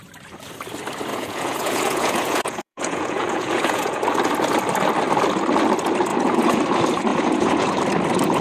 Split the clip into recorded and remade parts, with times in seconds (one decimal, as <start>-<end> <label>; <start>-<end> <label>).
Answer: 0.0-1.1 recorded; 1.1-4.0 remade; 4.0-6.1 recorded; 6.1-6.6 remade; 6.6-7.1 recorded; 7.1-7.8 remade; 7.8-8.4 recorded